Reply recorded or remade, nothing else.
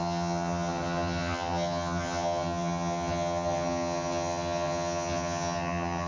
remade